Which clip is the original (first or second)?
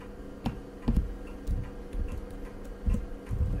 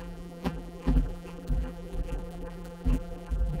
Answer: first